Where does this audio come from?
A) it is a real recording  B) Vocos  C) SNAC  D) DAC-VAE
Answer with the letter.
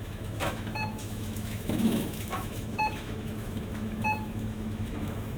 D